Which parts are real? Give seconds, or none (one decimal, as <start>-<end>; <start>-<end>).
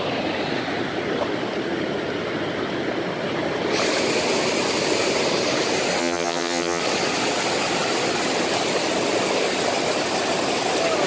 0.0-6.0; 6.8-11.1